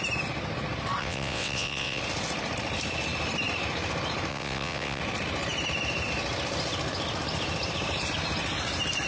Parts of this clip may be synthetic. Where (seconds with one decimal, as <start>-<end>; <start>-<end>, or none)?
1.0-2.0; 4.3-5.0